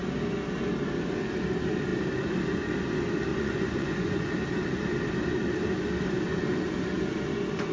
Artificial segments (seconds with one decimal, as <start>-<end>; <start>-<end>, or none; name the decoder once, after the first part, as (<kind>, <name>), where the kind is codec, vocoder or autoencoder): 3.3-4.3 (vocoder, Vocos)